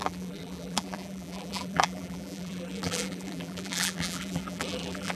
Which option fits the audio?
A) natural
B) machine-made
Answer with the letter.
B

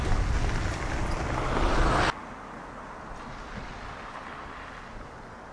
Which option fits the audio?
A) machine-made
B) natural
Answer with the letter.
B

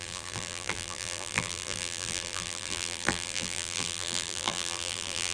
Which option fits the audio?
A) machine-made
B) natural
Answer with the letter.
A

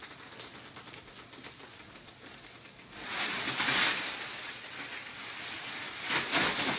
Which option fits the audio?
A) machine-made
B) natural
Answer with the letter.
B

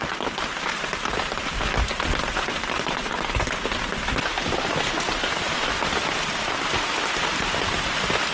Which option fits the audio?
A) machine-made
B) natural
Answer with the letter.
B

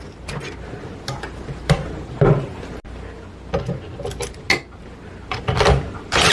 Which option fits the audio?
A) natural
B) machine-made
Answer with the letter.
A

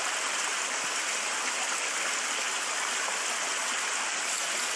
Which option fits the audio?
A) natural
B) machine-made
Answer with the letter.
A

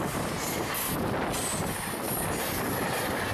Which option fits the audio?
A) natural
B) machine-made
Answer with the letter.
A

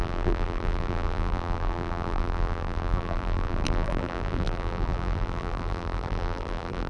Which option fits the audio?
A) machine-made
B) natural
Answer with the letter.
A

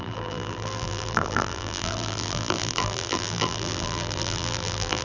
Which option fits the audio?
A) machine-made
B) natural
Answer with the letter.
A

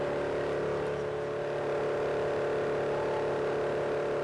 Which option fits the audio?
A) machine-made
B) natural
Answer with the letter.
B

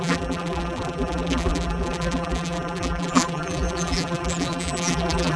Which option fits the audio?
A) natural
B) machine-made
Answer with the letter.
B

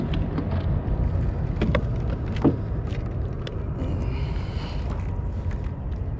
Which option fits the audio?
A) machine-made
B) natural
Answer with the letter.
B